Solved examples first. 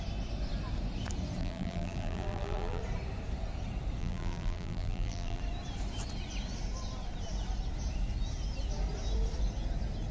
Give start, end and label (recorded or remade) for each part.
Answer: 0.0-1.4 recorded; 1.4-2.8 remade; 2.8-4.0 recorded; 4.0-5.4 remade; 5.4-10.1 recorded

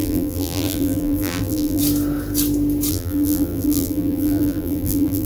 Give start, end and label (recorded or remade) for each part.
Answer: 0.0-1.8 remade; 1.8-2.9 recorded; 2.9-5.3 remade

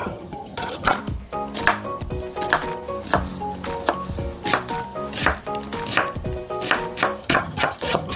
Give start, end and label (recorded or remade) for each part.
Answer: 0.0-1.0 remade; 1.0-7.2 recorded; 7.2-8.2 remade

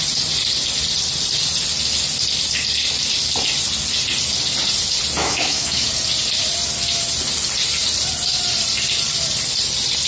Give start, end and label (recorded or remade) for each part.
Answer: 0.0-5.2 recorded; 5.2-5.9 remade; 5.9-10.1 recorded

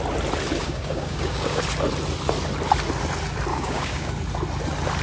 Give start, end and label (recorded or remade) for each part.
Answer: 0.0-0.6 recorded; 0.6-1.6 remade; 1.6-3.5 recorded; 3.5-4.1 remade; 4.1-5.0 recorded

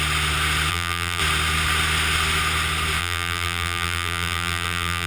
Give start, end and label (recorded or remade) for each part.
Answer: 0.0-0.7 recorded; 0.7-1.2 remade; 1.2-3.0 recorded; 3.0-5.1 remade